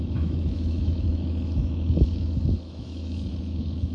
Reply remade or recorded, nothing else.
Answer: remade